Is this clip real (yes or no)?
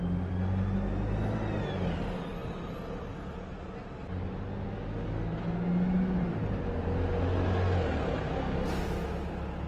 yes